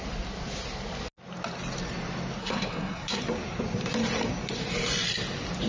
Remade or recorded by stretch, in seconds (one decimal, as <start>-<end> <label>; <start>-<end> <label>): 0.0-2.4 recorded; 2.4-3.2 remade; 3.2-5.7 recorded